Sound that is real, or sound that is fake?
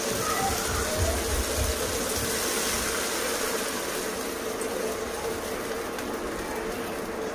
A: real